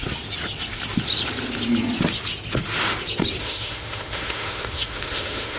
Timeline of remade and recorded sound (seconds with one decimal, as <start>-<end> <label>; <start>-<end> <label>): 0.0-3.4 recorded; 3.4-5.6 remade

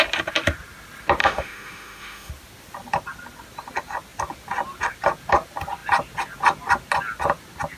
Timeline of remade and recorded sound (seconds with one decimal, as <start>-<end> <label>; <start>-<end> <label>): 0.0-1.2 recorded; 1.2-2.3 remade; 2.3-7.8 recorded

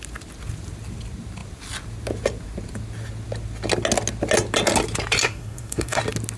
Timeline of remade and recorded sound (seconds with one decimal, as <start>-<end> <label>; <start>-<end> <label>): 0.0-5.2 recorded; 5.2-6.0 remade; 6.0-6.4 recorded

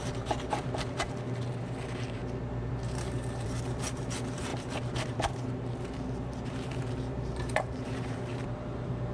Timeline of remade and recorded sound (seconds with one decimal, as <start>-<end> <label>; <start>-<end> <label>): 0.0-2.2 remade; 2.2-2.7 recorded; 2.7-9.1 remade

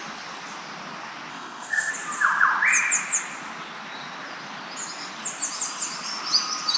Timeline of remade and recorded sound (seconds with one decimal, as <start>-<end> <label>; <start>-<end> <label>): 0.0-1.3 recorded; 1.3-1.9 remade; 1.9-6.8 recorded

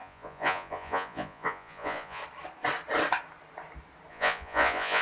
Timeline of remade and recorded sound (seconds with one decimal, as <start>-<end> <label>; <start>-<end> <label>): 0.0-2.2 remade; 2.2-4.1 recorded; 4.1-5.0 remade

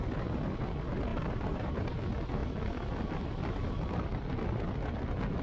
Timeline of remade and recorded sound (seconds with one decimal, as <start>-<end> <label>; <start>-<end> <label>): 0.0-1.1 recorded; 1.1-2.0 remade; 2.0-5.4 recorded

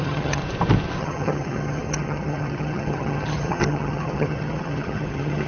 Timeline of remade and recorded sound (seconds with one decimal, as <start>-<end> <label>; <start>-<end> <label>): 0.0-0.4 remade; 0.4-1.0 recorded; 1.0-5.5 remade